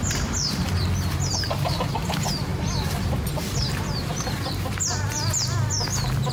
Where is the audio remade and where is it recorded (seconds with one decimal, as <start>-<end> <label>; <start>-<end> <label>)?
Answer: 0.0-0.8 remade; 0.8-1.3 recorded; 1.3-6.3 remade